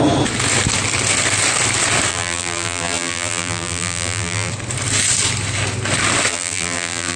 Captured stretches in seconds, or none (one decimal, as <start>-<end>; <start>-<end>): 0.0-2.1; 4.5-6.3

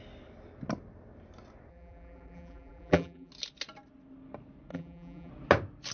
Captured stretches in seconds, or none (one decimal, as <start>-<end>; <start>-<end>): 0.0-1.7; 3.3-4.7; 5.3-5.9

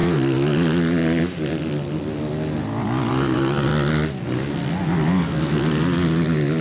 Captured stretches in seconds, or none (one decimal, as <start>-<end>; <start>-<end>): 0.0-3.1; 3.7-6.6

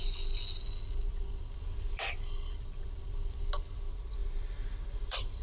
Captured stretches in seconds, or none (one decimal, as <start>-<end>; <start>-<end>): 0.0-1.1; 3.4-4.2

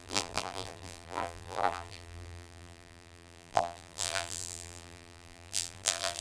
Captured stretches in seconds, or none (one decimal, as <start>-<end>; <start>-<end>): none

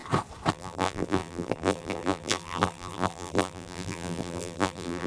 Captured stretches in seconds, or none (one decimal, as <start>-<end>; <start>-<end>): 0.0-0.5